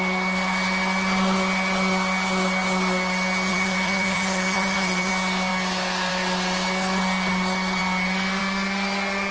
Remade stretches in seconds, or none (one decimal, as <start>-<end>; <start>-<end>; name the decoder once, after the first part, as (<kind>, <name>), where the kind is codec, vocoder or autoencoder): 3.5-5.1 (vocoder, HiFi-GAN)